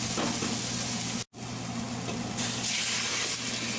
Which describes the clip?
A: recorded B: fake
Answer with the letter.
A